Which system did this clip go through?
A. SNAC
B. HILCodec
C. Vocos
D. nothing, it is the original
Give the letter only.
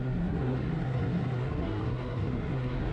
A